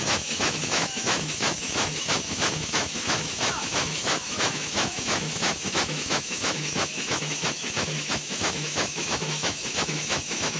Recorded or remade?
remade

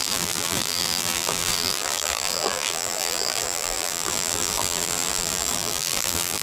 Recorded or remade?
remade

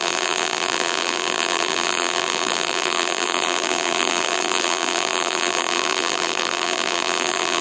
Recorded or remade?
remade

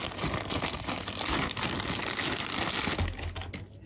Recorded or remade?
recorded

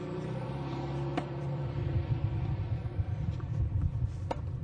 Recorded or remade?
remade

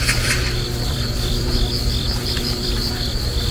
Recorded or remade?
remade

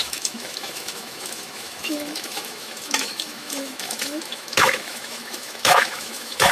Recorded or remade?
remade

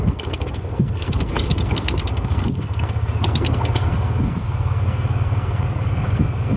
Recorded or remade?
remade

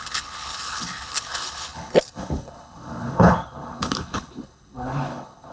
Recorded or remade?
remade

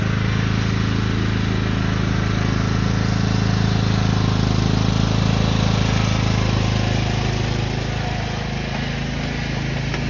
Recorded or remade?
recorded